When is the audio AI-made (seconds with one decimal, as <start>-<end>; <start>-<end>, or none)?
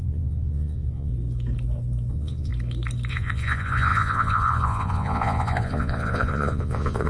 0.0-1.1; 2.1-2.5; 3.1-7.1